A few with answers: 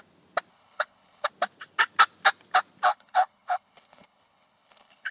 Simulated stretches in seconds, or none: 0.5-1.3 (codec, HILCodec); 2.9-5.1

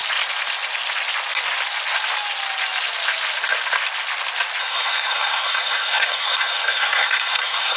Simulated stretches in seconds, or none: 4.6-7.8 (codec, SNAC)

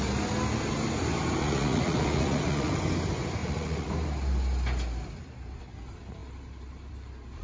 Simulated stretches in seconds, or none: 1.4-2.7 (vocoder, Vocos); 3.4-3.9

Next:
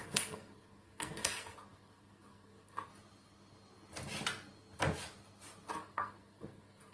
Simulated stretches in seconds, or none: 0.0-2.9 (codec, SNAC); 5.7-6.9

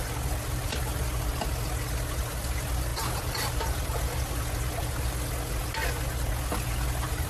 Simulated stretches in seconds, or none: none